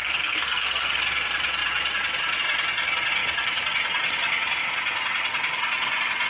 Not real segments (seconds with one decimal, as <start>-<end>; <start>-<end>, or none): 0.0-1.0